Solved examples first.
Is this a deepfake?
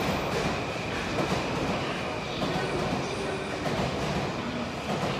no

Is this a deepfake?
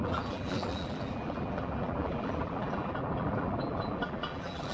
yes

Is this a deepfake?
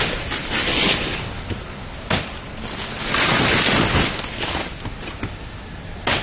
no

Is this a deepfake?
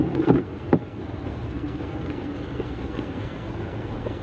yes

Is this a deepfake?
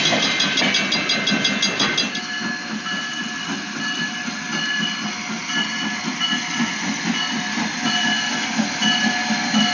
no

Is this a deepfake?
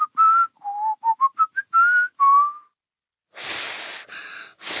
no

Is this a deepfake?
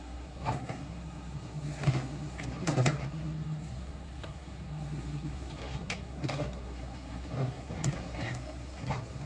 yes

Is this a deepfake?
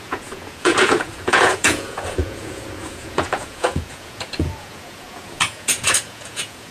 yes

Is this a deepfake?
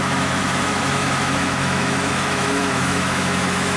yes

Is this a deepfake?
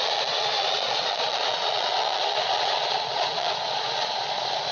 yes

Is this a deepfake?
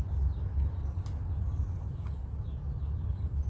no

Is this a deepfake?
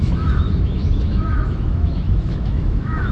yes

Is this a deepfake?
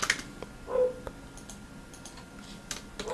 no